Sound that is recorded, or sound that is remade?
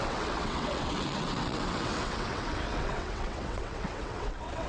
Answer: remade